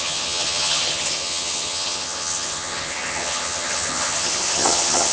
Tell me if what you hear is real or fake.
fake